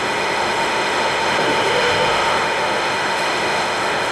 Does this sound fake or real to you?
fake